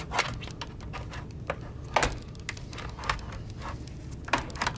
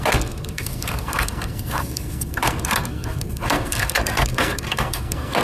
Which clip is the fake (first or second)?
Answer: second